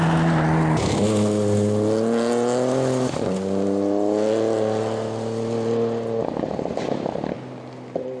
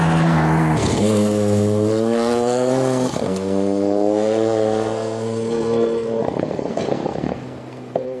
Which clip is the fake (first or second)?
second